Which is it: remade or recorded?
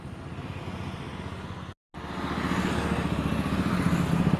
recorded